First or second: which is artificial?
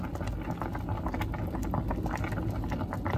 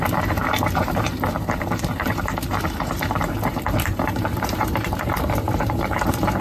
second